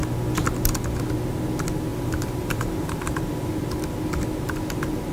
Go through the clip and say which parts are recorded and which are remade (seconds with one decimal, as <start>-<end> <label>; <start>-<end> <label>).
0.0-1.9 recorded; 1.9-3.5 remade; 3.5-5.1 recorded